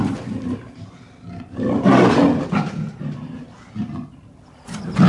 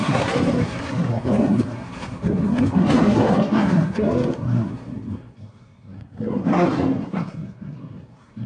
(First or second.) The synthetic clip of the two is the second